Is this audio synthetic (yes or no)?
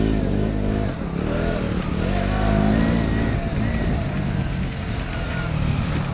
no